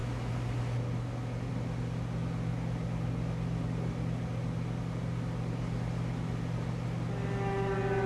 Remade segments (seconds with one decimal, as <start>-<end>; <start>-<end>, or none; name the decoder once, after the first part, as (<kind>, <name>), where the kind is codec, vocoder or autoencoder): none